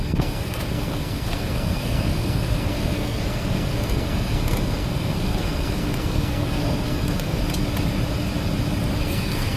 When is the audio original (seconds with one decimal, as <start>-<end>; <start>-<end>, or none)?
7.4-9.0